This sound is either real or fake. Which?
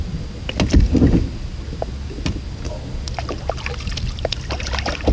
real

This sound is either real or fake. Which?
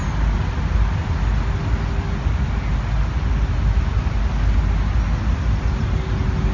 real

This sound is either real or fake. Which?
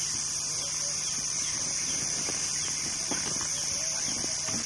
real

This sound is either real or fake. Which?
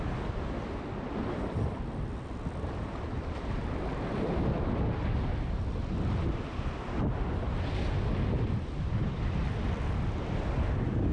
real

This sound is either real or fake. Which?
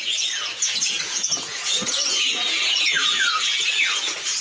fake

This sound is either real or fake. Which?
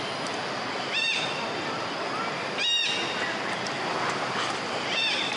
real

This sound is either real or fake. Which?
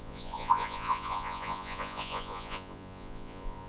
fake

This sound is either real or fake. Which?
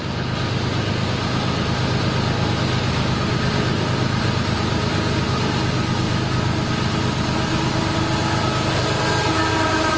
real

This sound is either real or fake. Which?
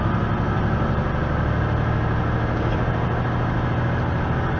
real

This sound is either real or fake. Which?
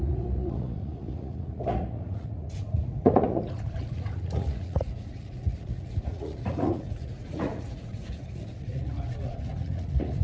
fake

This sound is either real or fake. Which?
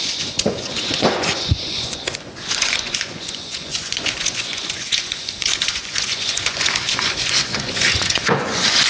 fake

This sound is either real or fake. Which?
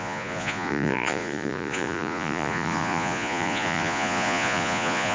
fake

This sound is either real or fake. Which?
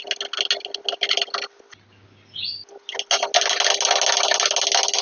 real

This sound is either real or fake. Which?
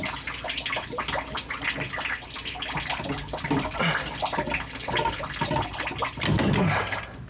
real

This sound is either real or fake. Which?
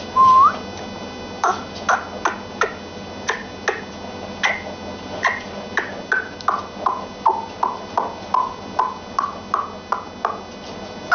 real